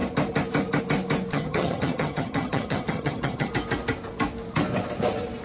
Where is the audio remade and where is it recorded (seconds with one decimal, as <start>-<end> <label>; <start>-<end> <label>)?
0.0-1.3 recorded; 1.3-3.5 remade; 3.5-5.4 recorded